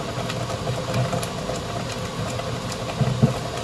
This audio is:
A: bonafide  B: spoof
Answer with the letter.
A